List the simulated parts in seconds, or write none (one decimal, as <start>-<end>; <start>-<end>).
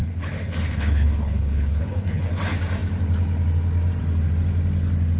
0.0-2.2